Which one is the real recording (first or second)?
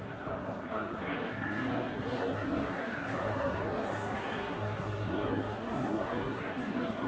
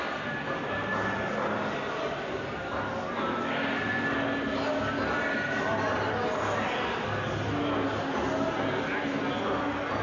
second